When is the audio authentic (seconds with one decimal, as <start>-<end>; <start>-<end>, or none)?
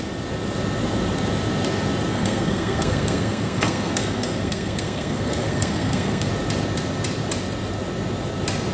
0.0-2.1; 6.3-8.7